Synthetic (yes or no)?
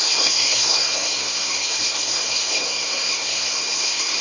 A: yes